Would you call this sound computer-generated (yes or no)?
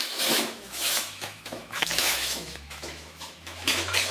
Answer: yes